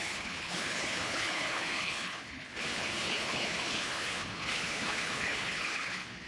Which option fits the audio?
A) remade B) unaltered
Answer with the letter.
A